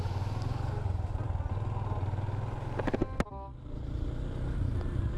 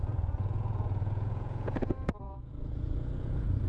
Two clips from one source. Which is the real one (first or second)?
first